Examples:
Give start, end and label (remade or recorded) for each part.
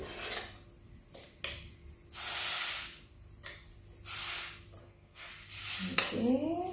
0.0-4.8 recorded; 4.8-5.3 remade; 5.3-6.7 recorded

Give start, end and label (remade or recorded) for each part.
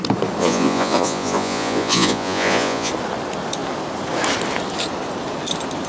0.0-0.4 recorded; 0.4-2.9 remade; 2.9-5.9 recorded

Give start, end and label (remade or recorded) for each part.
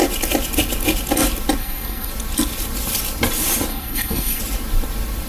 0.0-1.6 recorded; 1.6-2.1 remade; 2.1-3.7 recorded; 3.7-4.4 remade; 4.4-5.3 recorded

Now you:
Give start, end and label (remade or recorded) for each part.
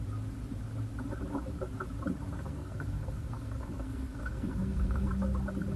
0.0-2.3 recorded; 2.3-5.1 remade; 5.1-5.8 recorded